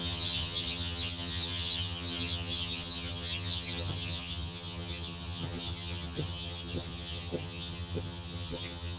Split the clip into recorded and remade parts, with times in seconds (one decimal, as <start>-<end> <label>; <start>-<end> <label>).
0.0-9.0 remade